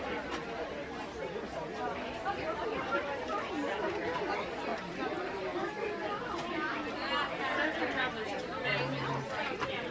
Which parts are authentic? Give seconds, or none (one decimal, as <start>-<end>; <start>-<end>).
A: 0.0-9.9